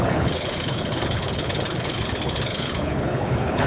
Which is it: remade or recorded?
remade